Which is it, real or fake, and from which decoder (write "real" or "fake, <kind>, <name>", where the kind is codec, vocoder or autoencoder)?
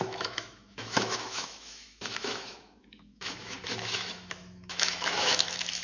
fake, autoencoder, DAC-VAE